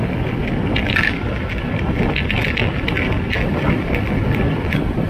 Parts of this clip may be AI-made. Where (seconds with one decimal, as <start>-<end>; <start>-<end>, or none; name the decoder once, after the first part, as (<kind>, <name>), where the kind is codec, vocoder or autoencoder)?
none